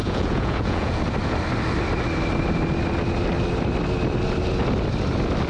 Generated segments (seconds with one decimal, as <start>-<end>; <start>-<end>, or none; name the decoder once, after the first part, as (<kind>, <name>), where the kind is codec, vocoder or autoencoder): 0.0-1.0 (vocoder, Vocos)